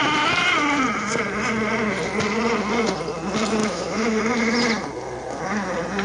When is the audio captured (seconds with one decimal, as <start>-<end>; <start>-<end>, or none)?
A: 0.0-3.6; 4.2-6.0